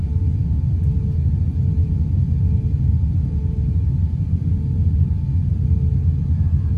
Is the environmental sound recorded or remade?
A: recorded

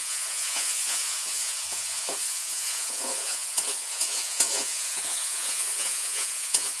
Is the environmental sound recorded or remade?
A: remade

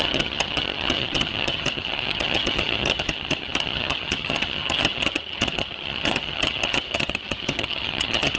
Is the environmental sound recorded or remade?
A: remade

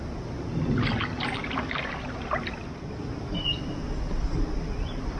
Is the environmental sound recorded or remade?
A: recorded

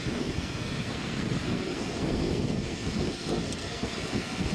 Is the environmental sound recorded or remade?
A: remade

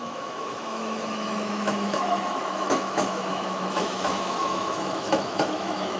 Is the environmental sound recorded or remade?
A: remade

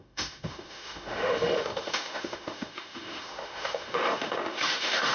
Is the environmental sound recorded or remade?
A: remade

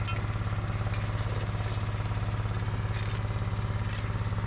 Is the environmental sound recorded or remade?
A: recorded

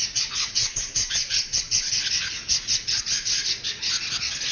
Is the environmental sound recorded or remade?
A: remade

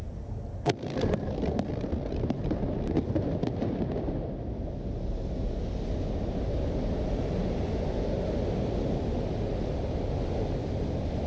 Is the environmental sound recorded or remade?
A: recorded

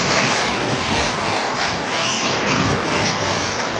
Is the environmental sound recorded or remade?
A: remade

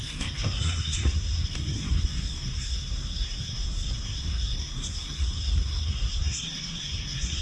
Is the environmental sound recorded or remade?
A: remade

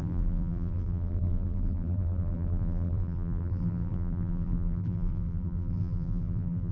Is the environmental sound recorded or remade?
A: remade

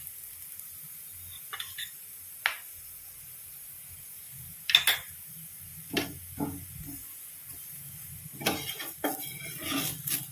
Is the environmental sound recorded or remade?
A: recorded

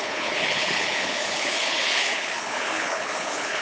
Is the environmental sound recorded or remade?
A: remade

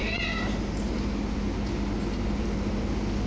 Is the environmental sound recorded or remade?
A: recorded